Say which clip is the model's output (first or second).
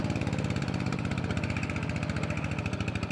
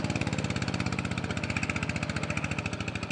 first